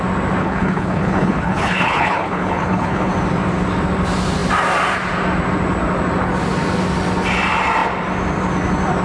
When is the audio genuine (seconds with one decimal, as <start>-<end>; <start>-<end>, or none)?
0.0-0.4; 3.1-9.0

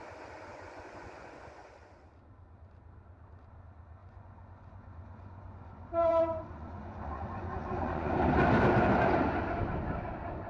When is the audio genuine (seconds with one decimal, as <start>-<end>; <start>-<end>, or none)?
0.0-0.5; 1.7-4.0; 8.1-10.5